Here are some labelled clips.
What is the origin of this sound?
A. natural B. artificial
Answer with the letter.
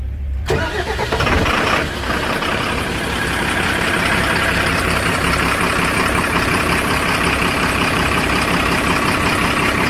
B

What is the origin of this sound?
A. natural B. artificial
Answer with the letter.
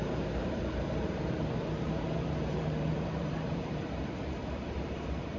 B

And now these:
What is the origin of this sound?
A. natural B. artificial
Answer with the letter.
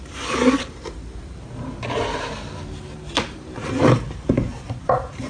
B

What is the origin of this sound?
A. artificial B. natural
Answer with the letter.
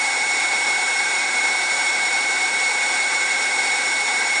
A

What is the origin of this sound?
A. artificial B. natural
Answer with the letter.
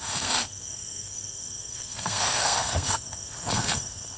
A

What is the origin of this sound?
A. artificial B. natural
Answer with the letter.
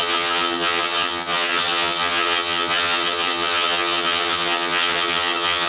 A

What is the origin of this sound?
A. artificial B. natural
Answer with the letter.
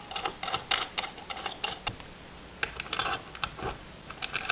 B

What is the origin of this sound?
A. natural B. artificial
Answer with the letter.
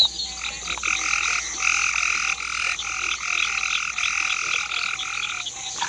A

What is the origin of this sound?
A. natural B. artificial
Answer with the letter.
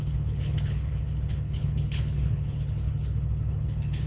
B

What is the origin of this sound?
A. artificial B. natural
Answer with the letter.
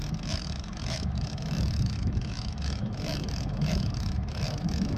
A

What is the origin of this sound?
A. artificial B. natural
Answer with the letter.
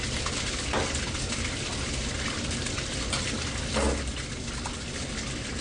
B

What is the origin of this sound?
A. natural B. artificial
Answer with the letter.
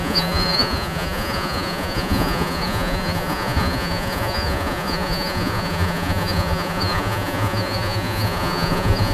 B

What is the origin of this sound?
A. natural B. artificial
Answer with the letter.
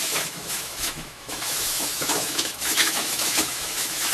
B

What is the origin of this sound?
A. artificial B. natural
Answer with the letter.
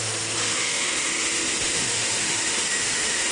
A